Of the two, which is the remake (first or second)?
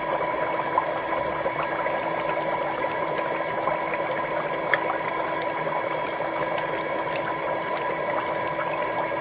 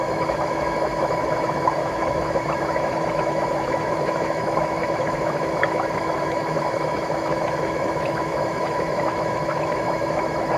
second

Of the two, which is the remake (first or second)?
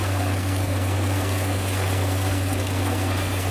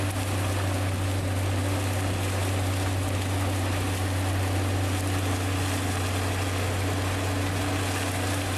first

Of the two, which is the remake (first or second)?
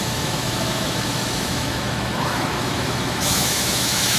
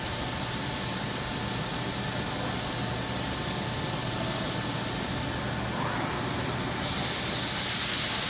first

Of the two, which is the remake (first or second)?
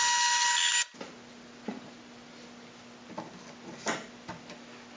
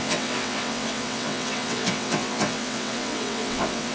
second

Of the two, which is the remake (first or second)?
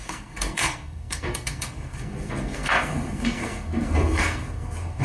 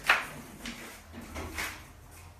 first